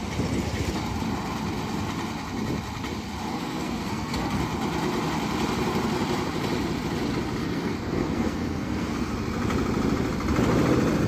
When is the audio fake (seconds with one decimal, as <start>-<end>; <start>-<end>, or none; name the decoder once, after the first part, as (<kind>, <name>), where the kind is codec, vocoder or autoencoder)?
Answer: 3.3-4.4 (codec, SNAC); 7.4-9.1